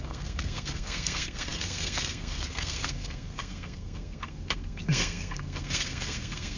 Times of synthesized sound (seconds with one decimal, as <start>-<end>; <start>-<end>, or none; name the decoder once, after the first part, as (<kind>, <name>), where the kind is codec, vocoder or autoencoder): 0.0-6.6 (codec, SNAC)